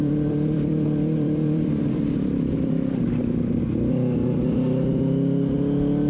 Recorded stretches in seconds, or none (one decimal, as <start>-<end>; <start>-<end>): 3.7-6.1